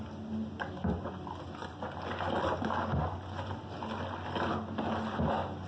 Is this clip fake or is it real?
real